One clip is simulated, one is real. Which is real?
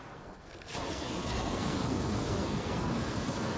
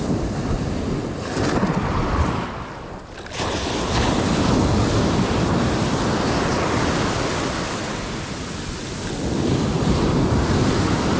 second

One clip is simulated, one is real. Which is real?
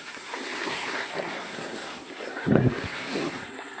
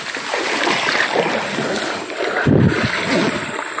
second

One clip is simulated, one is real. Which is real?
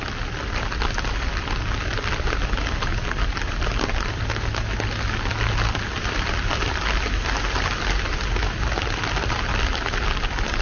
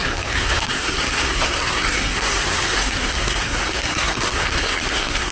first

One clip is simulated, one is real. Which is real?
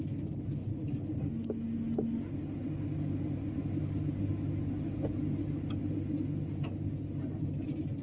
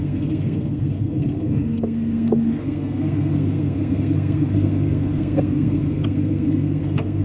first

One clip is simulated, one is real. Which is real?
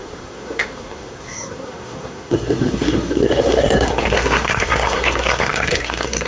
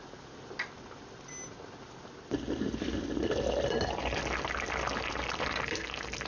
second